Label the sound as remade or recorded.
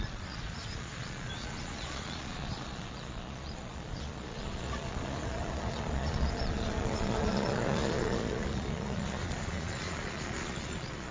remade